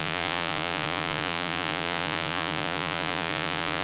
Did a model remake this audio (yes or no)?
yes